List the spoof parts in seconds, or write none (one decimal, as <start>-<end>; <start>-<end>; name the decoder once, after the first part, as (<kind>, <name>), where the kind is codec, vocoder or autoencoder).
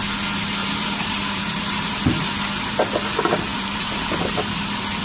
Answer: 0.6-1.9 (vocoder, BigVGAN v2); 3.5-5.0